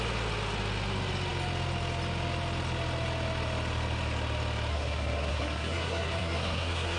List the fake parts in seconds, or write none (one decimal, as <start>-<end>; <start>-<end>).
4.7-7.0